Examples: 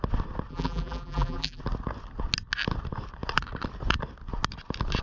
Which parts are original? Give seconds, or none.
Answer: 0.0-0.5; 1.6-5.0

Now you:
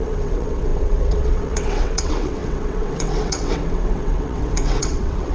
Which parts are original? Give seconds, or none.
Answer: none

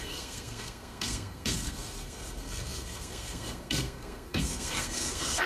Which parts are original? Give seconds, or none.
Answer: none

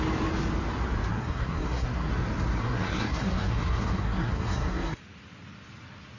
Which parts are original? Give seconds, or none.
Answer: 0.0-1.1; 2.1-2.6; 5.0-6.2